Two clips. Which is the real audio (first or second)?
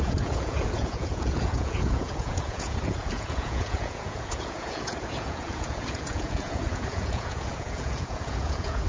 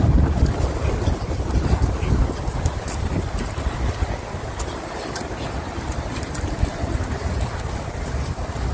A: second